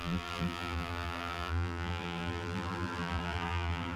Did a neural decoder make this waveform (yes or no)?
yes